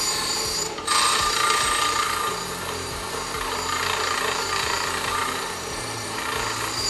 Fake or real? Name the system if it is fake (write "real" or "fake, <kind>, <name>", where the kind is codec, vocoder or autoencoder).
fake, vocoder, BigVGAN v2